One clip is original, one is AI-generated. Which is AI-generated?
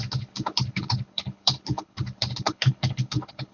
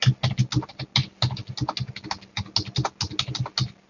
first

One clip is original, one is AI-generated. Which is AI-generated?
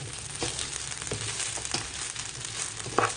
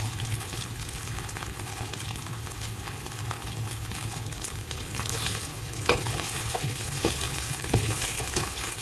second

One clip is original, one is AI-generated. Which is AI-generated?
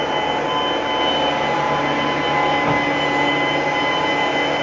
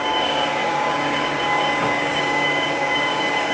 second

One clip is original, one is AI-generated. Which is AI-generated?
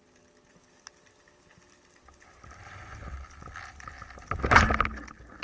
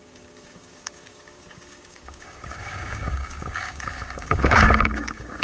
second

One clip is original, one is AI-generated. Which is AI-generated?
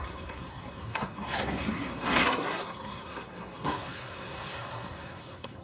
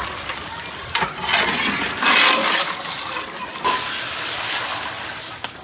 first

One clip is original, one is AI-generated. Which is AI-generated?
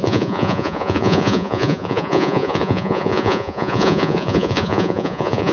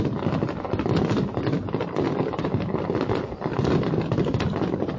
first